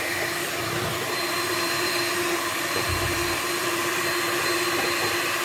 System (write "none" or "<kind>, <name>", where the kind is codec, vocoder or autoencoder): vocoder, BigVGAN v2